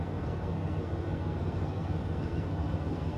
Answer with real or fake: fake